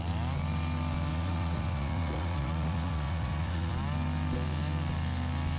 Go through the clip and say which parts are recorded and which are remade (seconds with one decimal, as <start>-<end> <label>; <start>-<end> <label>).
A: 0.0-1.1 recorded; 1.1-3.7 remade; 3.7-5.6 recorded

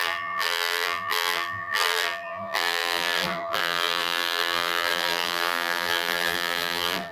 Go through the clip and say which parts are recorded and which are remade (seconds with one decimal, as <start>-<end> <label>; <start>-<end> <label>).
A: 0.0-7.1 remade

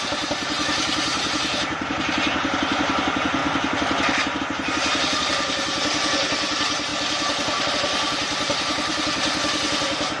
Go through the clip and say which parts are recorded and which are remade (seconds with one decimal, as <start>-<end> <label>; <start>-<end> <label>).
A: 0.0-3.4 remade; 3.4-4.4 recorded; 4.4-8.9 remade; 8.9-10.2 recorded

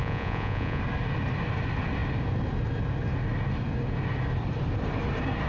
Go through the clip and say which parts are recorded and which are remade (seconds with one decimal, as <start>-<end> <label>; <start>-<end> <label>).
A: 0.0-0.8 remade; 0.8-5.5 recorded

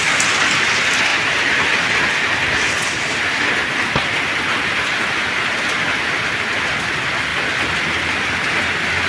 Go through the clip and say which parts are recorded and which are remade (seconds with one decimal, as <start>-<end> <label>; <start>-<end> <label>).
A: 0.0-7.3 recorded; 7.3-9.1 remade

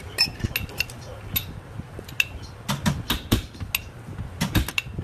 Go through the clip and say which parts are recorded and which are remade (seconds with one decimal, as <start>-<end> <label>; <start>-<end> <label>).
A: 0.0-5.0 recorded